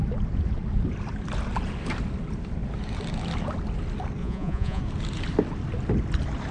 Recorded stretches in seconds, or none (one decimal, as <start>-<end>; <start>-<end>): 0.0-4.2; 4.8-6.5